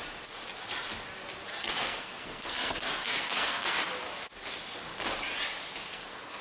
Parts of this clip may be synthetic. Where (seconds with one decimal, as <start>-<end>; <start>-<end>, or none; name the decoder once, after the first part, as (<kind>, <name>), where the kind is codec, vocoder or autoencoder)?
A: 1.5-3.8 (codec, SNAC); 5.9-6.4